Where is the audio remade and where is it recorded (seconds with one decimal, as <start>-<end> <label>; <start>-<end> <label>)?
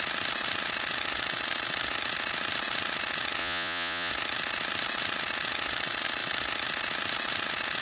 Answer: 0.0-3.4 recorded; 3.4-4.1 remade; 4.1-7.8 recorded